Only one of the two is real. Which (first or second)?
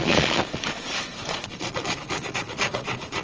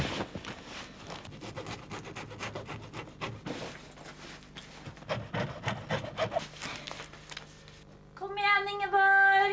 second